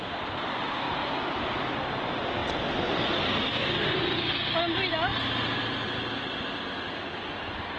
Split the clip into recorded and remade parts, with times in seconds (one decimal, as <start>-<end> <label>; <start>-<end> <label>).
0.0-7.8 recorded